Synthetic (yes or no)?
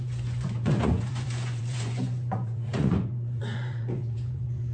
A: yes